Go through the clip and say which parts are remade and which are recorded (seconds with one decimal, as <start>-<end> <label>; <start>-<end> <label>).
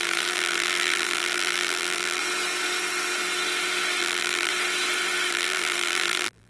0.0-2.2 remade; 2.2-4.0 recorded; 4.0-4.5 remade; 4.5-5.3 recorded; 5.3-6.5 remade